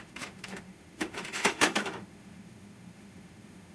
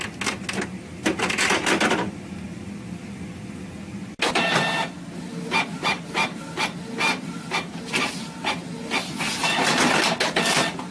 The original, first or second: second